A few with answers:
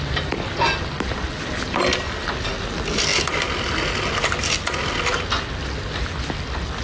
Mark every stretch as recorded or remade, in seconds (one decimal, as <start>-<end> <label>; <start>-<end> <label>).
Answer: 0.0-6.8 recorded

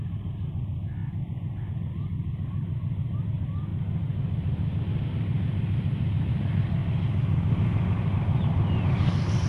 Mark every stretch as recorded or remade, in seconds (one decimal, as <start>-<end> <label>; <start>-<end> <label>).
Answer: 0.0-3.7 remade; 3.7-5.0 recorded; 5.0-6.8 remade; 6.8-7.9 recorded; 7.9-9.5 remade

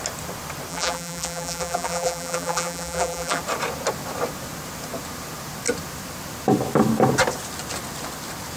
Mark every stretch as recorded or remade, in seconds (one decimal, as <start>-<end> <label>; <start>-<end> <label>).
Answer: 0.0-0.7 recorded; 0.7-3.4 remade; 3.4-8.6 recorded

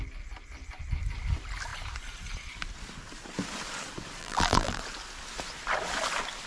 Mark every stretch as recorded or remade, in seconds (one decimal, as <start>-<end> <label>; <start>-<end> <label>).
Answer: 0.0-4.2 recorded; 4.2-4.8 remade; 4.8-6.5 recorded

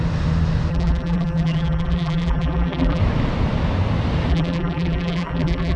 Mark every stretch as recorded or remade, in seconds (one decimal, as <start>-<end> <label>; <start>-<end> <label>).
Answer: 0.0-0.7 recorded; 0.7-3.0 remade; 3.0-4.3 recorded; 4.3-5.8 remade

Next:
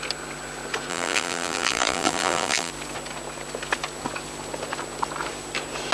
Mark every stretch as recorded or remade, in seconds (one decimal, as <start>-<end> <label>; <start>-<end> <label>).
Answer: 0.0-0.9 recorded; 0.9-2.7 remade; 2.7-5.9 recorded